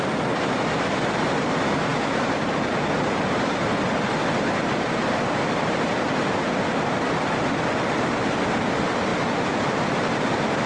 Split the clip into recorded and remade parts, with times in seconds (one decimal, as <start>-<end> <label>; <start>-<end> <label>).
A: 0.0-10.7 recorded